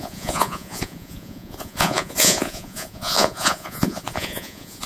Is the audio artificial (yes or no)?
yes